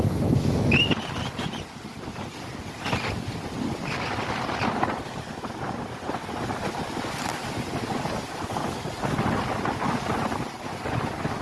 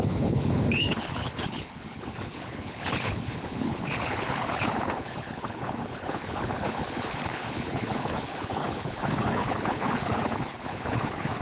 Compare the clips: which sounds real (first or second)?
first